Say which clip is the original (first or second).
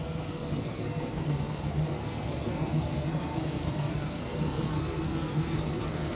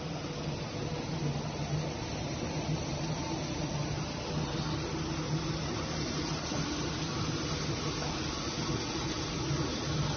second